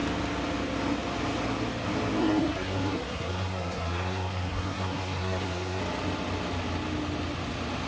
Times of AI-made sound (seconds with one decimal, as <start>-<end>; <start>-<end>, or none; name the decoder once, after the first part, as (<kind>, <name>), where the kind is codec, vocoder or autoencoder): 2.2-5.8 (codec, SNAC)